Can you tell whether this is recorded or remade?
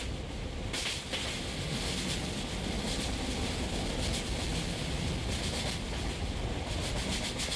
recorded